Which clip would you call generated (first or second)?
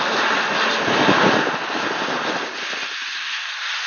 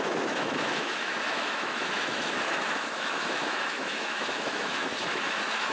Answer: second